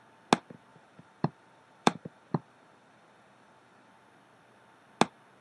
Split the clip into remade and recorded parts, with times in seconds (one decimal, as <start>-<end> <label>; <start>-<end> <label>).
0.0-0.7 recorded; 0.7-3.9 remade; 3.9-5.4 recorded